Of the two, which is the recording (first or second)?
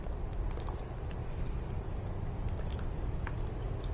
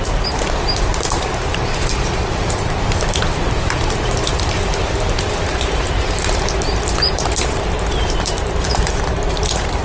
first